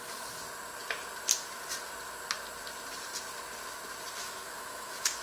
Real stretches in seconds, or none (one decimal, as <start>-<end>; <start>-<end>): 0.0-4.2